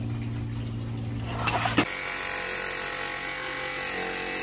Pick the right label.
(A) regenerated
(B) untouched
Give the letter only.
B